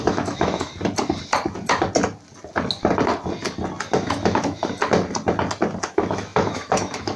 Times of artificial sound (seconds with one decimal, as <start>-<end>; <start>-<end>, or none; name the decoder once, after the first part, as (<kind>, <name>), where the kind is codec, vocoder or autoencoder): 0.0-0.7 (autoencoder, DAC-VAE); 4.0-4.6; 5.8-7.2